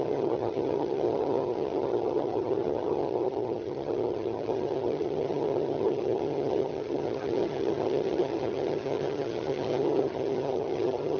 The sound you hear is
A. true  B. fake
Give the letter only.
B